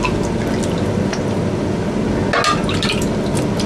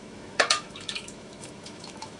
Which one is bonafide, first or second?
first